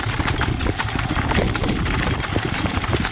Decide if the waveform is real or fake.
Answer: real